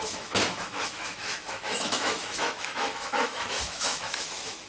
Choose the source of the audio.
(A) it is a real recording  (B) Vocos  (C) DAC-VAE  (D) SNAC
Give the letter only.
C